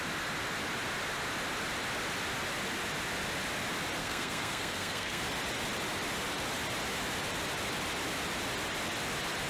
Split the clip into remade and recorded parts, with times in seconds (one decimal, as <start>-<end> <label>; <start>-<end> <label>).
0.0-4.0 recorded; 4.0-5.2 remade; 5.2-9.5 recorded